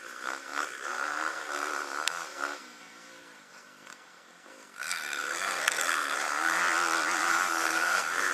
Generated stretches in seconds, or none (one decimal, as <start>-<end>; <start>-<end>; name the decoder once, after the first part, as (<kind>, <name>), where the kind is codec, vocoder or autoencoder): 0.0-6.6 (codec, SNAC); 7.3-8.3

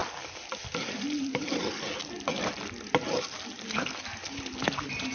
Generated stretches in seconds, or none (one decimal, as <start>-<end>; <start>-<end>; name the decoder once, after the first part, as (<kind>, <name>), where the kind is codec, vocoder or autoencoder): none

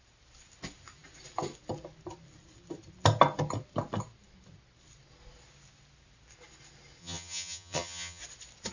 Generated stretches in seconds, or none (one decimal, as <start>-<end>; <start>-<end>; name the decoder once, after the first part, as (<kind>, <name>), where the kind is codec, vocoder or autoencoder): 7.0-8.2 (vocoder, HiFi-GAN)

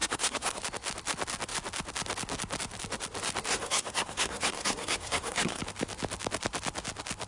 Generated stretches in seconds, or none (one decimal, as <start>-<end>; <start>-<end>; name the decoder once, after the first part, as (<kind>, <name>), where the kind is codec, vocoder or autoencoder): 0.0-0.6 (codec, SNAC); 3.5-5.6

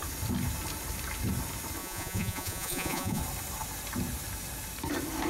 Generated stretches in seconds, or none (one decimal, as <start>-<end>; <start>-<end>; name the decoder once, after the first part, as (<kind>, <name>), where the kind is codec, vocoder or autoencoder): 1.8-3.2 (vocoder, Vocos)

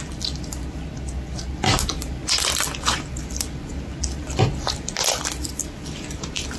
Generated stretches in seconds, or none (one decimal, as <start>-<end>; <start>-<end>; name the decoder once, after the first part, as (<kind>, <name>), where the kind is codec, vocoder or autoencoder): none